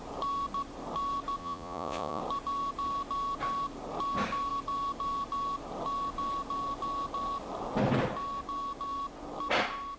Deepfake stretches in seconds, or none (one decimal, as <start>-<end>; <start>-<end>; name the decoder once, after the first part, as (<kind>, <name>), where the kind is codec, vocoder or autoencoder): 1.4-2.2 (vocoder, Vocos)